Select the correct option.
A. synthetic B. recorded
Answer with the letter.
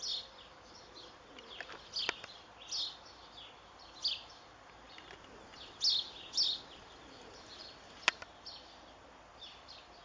B